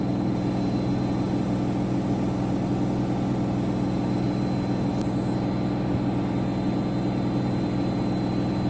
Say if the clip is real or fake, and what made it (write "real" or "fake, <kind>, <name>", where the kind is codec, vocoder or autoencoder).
real